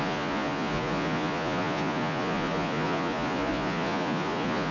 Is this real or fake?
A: fake